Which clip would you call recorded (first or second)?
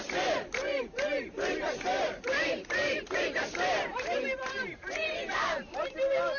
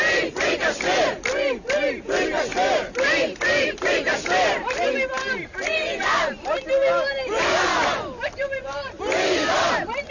second